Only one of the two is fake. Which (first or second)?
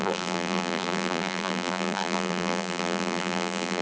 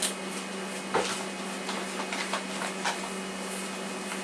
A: first